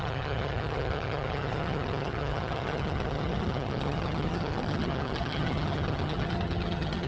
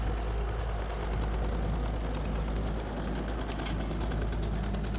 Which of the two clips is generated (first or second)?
first